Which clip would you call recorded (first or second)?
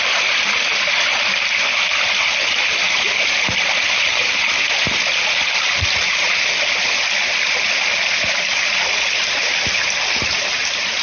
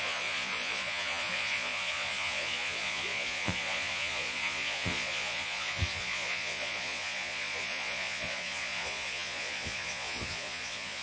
first